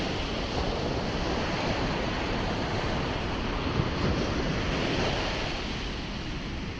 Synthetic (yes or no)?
no